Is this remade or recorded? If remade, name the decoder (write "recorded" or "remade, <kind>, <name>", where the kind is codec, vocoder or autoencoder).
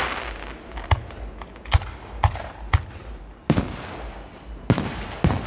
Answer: recorded